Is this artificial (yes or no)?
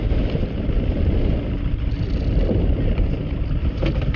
no